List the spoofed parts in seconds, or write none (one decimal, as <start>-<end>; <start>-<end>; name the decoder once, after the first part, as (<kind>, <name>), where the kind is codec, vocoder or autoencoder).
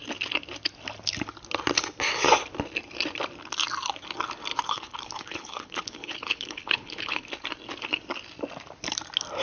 4.5-7.2 (codec, HILCodec)